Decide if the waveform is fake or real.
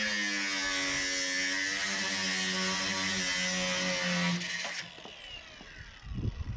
real